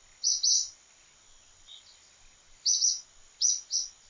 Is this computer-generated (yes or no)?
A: no